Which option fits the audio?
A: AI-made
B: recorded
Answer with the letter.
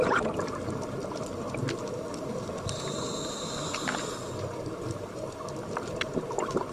B